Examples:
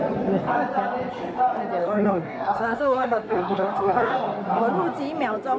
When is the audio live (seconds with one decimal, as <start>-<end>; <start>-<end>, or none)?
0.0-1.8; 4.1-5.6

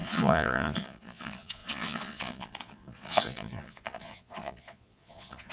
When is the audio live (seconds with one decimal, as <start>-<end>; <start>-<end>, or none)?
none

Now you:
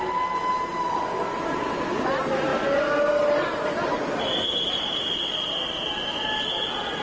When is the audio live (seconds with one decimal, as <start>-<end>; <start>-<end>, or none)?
0.0-7.0

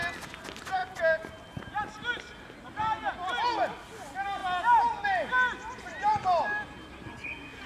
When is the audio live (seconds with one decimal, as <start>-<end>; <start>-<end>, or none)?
0.0-7.7

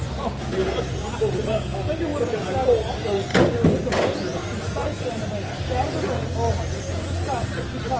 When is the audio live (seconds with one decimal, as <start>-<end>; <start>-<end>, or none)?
0.0-8.0

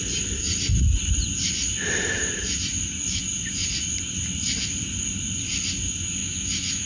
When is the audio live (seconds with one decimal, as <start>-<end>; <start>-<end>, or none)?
0.0-6.2